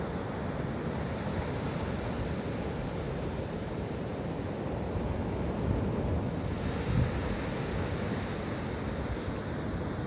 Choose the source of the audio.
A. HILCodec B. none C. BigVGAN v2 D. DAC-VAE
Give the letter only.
B